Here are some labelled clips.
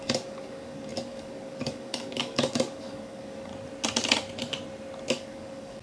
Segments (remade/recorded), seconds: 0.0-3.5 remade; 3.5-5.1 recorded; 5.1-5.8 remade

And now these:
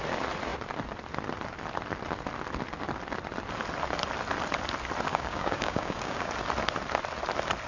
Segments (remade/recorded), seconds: 0.0-5.1 recorded; 5.1-6.3 remade; 6.3-7.7 recorded

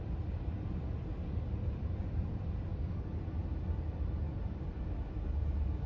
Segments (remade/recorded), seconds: 0.0-2.7 recorded; 2.7-3.2 remade; 3.2-5.9 recorded